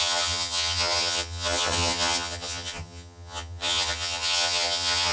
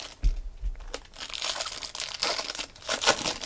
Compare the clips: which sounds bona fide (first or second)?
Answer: second